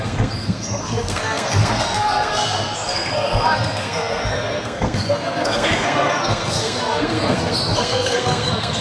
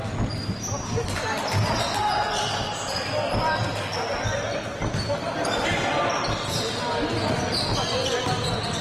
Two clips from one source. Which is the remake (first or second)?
first